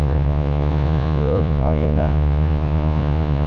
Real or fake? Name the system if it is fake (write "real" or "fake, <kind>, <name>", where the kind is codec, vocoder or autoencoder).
fake, vocoder, Vocos